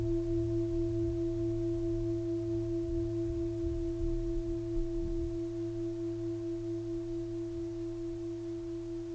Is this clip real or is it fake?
real